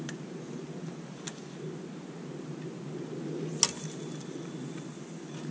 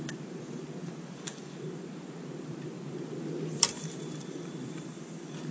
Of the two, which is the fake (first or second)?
second